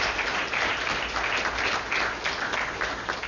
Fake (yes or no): no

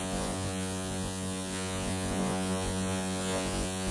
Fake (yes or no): yes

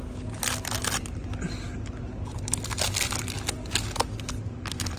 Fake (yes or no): no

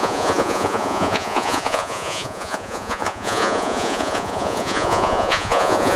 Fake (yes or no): yes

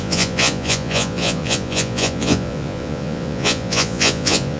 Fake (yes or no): yes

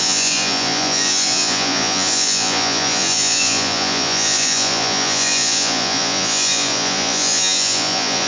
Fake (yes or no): yes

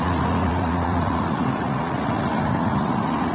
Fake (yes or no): yes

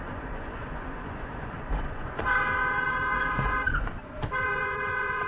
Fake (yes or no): yes